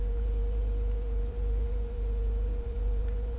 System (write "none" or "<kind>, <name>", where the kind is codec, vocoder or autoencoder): vocoder, BigVGAN v2